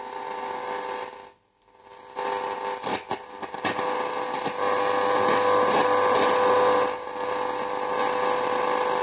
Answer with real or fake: real